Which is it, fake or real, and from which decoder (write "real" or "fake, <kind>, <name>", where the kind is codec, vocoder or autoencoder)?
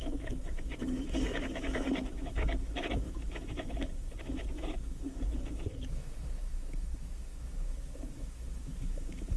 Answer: fake, autoencoder, DAC-VAE